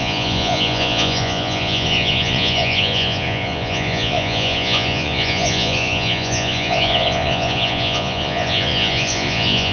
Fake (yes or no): yes